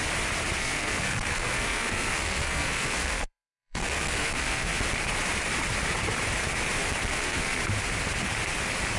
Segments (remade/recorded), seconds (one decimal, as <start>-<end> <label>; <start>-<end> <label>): 0.0-0.6 recorded; 0.6-4.8 remade; 4.8-7.1 recorded; 7.1-7.6 remade; 7.6-9.0 recorded